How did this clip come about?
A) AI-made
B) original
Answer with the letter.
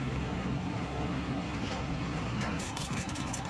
A